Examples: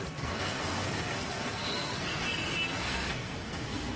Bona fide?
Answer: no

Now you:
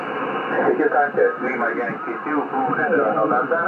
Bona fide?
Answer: yes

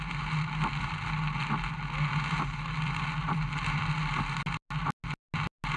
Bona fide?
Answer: yes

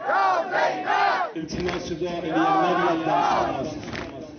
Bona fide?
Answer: yes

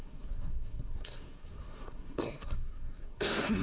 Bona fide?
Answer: no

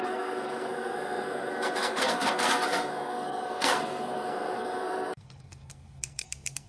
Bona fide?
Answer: no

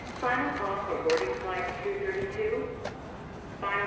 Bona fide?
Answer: yes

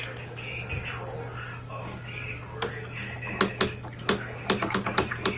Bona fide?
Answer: yes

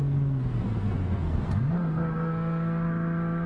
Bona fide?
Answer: no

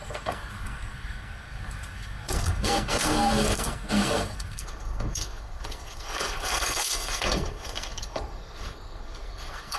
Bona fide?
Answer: no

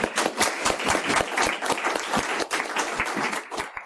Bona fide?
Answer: yes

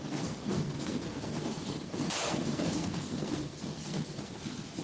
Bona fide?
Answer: no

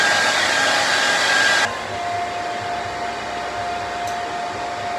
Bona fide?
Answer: yes